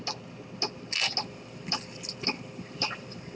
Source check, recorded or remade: recorded